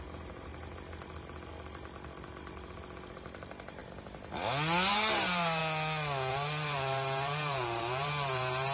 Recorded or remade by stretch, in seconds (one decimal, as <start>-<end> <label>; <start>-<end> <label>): 0.0-0.5 remade; 0.5-3.4 recorded; 3.4-3.8 remade; 3.8-4.9 recorded; 4.9-5.6 remade; 5.6-6.3 recorded; 6.3-8.7 remade